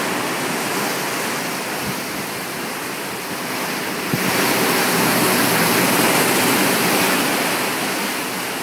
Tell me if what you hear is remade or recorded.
recorded